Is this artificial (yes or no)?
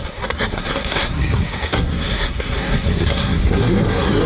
yes